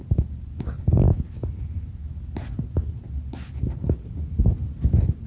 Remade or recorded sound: recorded